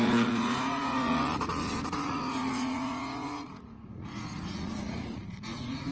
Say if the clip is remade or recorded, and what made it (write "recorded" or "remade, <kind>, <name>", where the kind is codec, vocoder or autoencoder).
remade, vocoder, Vocos